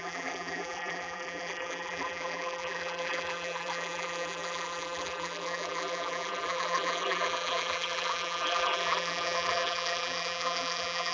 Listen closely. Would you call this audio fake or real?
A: fake